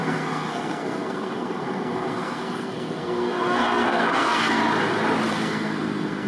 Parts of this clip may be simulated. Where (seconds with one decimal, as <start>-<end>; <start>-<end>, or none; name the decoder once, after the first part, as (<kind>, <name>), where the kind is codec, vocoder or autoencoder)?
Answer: 0.0-4.6 (codec, SNAC); 5.3-6.3